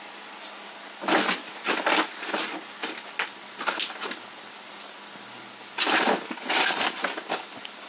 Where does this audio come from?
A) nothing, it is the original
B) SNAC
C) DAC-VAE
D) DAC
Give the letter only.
A